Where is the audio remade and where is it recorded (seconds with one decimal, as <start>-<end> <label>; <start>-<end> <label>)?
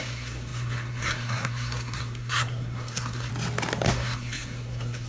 0.0-3.3 remade; 3.3-3.9 recorded; 3.9-5.1 remade